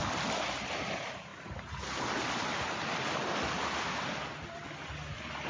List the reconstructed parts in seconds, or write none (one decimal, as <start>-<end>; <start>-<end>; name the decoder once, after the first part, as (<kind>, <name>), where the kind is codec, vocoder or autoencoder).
none